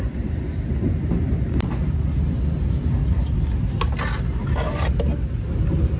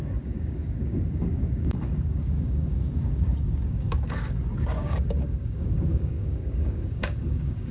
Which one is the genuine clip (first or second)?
first